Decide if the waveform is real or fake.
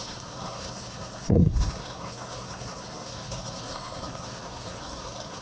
fake